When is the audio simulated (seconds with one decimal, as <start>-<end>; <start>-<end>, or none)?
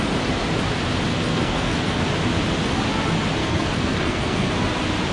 1.1-2.0; 3.4-4.5